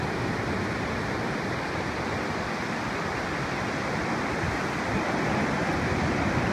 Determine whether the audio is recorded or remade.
recorded